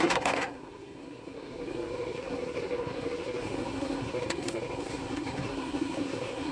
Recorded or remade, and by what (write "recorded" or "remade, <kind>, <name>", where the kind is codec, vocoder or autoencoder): remade, codec, SNAC